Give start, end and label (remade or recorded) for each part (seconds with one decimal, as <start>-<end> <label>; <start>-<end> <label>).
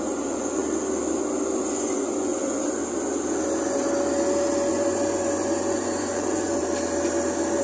0.0-0.6 remade; 0.6-1.6 recorded; 1.6-2.8 remade; 2.8-4.7 recorded; 4.7-6.6 remade; 6.6-7.6 recorded